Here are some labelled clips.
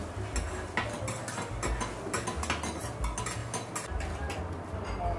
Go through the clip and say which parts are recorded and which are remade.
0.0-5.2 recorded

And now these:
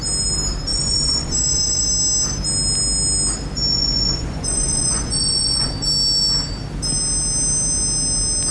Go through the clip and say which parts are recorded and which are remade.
0.0-0.7 recorded; 0.7-1.9 remade; 1.9-3.7 recorded; 3.7-5.7 remade; 5.7-8.5 recorded

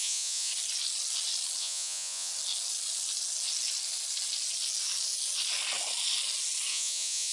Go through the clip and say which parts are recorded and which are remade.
0.0-0.5 remade; 0.5-1.6 recorded; 1.6-2.3 remade; 2.3-6.7 recorded; 6.7-7.3 remade